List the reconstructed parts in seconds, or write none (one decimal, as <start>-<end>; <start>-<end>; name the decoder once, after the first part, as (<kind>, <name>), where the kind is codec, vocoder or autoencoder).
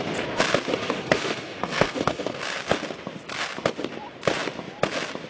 0.8-2.4 (codec, SNAC)